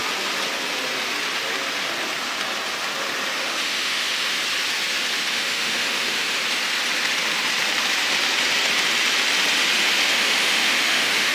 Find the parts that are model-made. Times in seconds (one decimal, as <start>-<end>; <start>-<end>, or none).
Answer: 3.3-4.4; 5.3-6.4; 10.1-11.3